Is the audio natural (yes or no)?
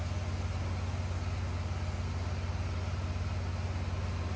yes